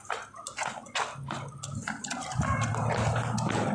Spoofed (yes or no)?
no